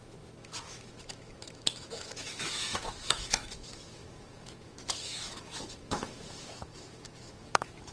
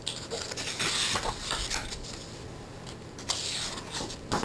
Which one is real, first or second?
second